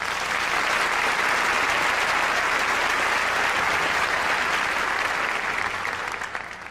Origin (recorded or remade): recorded